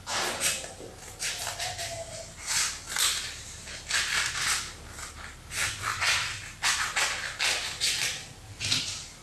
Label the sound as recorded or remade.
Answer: recorded